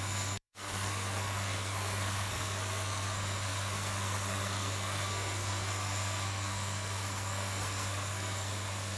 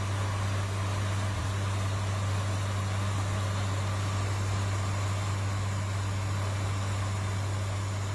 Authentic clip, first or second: second